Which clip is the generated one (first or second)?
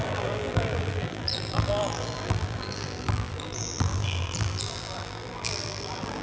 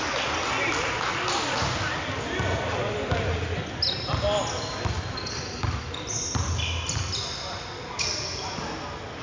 first